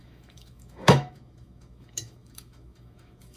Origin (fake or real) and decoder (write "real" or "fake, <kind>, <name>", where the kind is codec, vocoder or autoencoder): fake, autoencoder, DAC-VAE